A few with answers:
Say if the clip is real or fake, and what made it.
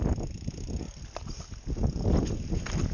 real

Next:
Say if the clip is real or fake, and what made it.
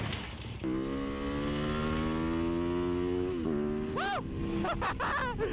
real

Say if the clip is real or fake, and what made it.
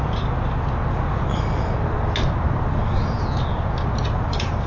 real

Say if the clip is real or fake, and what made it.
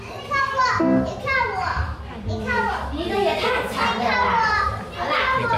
real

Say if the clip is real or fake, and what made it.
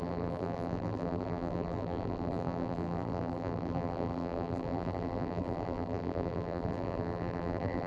fake, vocoder, BigVGAN v2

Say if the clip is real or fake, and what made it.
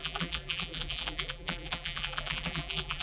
fake, vocoder, BigVGAN v2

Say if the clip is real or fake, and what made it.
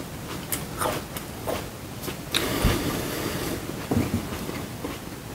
real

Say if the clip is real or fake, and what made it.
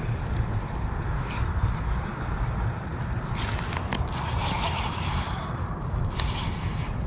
real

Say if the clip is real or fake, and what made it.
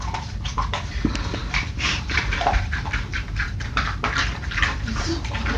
fake, vocoder, BigVGAN v2